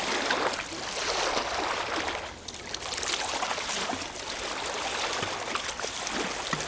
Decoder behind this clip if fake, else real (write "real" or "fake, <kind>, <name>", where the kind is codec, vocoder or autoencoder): real